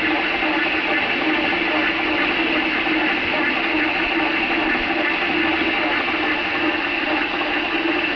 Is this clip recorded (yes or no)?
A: yes